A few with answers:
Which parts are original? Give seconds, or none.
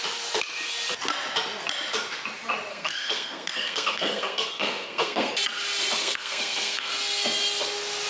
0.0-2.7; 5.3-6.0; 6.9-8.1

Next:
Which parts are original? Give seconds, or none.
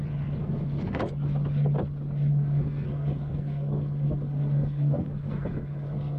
0.0-0.4; 1.0-2.3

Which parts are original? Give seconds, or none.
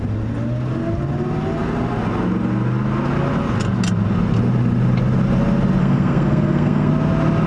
0.0-5.8; 6.9-7.5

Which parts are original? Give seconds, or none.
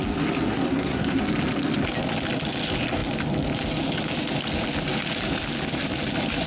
0.0-0.5; 1.2-6.5